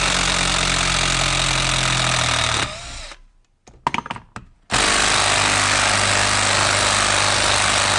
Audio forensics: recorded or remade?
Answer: recorded